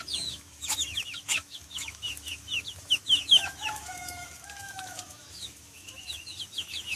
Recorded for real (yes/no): no